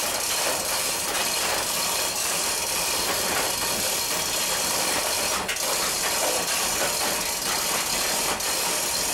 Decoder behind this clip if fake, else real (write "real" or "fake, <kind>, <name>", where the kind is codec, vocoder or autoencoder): real